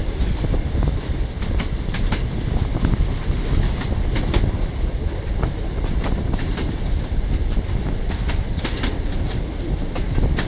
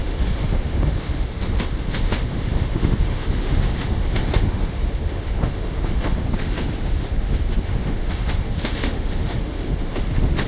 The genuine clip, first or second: first